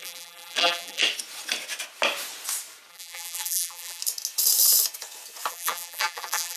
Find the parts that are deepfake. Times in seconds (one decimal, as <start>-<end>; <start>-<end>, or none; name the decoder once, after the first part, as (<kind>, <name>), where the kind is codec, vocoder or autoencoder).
0.0-1.0 (vocoder, BigVGAN v2); 2.9-4.0; 5.5-6.6